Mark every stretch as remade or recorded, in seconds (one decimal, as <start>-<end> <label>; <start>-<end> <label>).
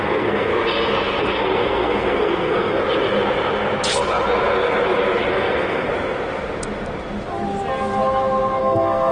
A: 0.0-0.5 remade; 0.5-1.2 recorded; 1.2-2.8 remade; 2.8-5.3 recorded; 5.3-5.9 remade; 5.9-8.6 recorded; 8.6-9.1 remade